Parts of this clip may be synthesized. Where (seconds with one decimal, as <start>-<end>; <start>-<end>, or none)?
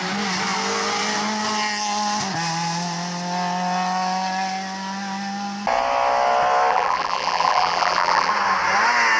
6.7-8.3